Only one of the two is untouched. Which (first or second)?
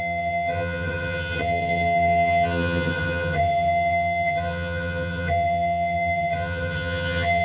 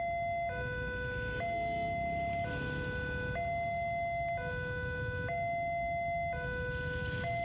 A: second